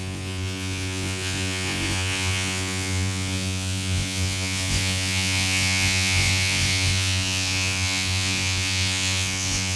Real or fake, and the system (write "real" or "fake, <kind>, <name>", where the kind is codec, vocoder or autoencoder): fake, vocoder, Vocos